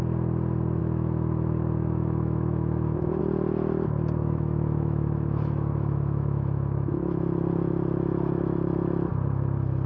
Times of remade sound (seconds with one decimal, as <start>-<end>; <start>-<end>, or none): 0.8-3.2; 4.2-7.2